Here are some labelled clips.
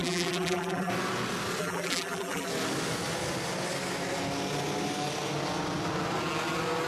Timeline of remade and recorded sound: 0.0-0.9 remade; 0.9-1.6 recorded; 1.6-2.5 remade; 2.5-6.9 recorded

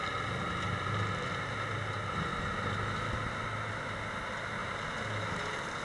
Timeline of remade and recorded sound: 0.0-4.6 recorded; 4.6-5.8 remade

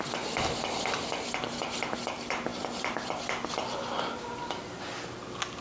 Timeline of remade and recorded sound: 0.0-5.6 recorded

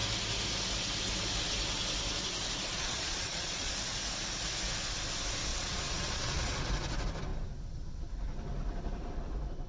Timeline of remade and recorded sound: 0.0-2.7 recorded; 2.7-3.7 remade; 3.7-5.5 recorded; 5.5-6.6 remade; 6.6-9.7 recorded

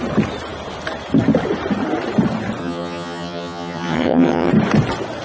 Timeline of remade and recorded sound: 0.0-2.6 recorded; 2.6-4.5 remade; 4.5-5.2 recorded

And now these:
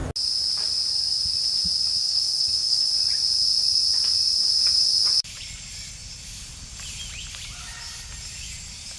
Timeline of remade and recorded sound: 0.0-2.0 recorded; 2.0-2.9 remade; 2.9-9.0 recorded